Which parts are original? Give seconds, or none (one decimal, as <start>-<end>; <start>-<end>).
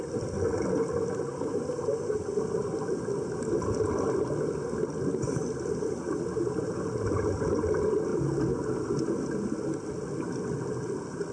0.0-11.3